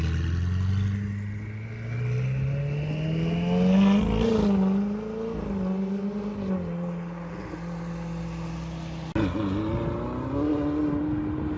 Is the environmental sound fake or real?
real